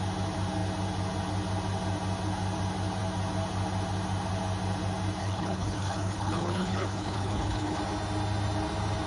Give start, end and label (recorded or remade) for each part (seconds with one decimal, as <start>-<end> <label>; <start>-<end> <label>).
0.0-5.2 recorded; 5.2-7.8 remade; 7.8-9.1 recorded